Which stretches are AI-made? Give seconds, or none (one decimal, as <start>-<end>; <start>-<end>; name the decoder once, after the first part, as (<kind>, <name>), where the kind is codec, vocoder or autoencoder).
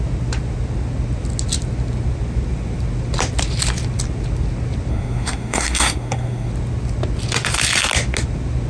4.9-6.5 (codec, SNAC)